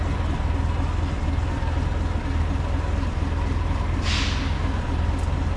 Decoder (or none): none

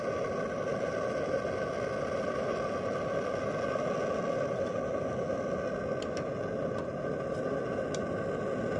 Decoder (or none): none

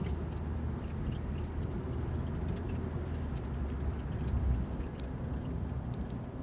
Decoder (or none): none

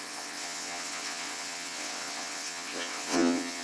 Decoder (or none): vocoder, WaveNeXt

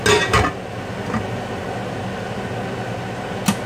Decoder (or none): none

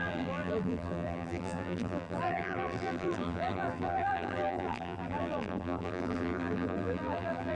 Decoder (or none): vocoder, BigVGAN v2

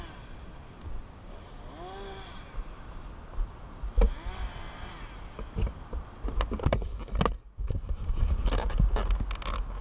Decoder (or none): none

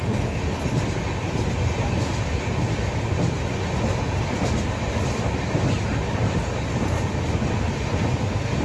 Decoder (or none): none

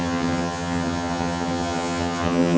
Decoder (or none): vocoder, HiFi-GAN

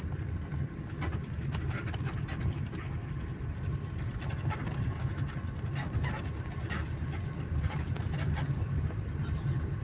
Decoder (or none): none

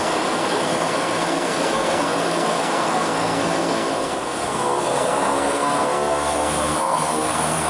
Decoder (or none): codec, SNAC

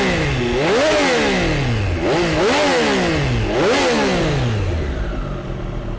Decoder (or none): none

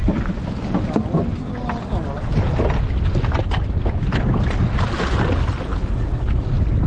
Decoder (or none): none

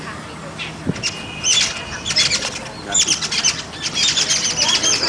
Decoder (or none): none